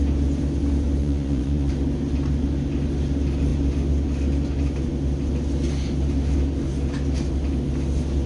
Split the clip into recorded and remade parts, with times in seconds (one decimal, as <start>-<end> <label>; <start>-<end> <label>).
0.0-1.0 recorded; 1.0-1.7 remade; 1.7-8.3 recorded